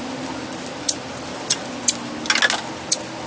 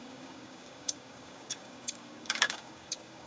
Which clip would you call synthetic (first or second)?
second